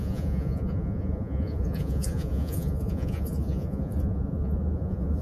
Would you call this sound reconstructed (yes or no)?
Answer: yes